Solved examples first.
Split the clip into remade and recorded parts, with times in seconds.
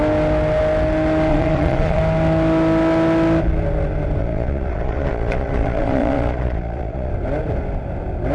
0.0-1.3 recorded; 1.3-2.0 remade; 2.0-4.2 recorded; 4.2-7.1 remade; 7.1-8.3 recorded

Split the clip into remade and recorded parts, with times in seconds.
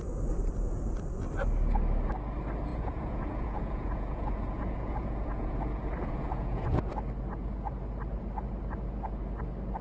0.0-2.7 recorded; 2.7-5.6 remade; 5.6-6.0 recorded; 6.0-6.8 remade; 6.8-9.8 recorded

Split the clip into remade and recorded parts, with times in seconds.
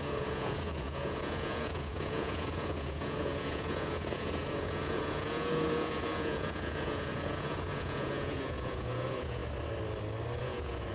0.0-9.4 remade; 9.4-10.4 recorded; 10.4-10.9 remade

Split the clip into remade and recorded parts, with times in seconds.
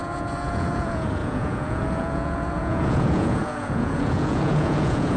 0.0-5.2 remade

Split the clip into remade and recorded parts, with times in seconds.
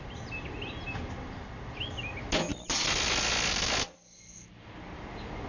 0.0-5.5 recorded